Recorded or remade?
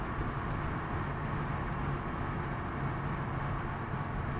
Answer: recorded